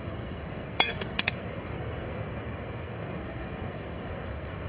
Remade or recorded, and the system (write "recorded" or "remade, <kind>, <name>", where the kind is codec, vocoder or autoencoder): remade, codec, SNAC